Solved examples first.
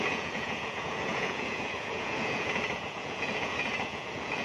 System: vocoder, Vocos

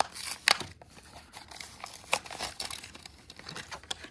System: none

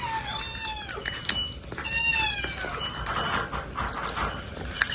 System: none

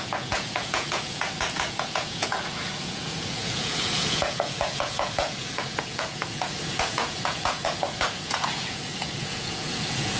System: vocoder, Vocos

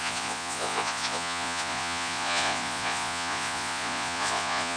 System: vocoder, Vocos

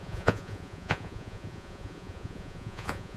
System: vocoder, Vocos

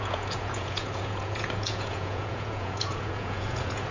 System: vocoder, Vocos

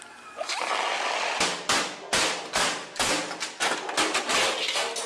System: none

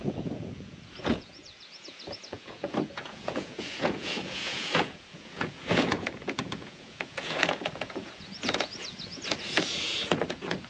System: vocoder, Vocos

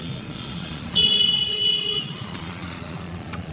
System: vocoder, Vocos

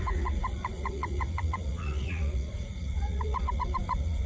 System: vocoder, Vocos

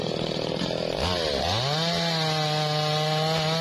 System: none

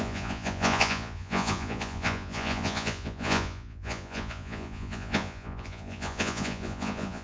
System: vocoder, Vocos